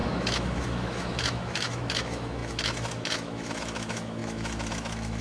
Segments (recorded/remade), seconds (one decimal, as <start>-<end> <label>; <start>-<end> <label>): 0.0-5.2 remade